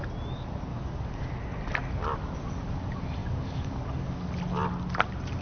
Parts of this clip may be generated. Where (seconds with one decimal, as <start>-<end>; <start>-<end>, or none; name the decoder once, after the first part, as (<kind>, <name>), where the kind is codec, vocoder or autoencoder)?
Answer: 0.7-1.3 (codec, DAC); 3.2-4.3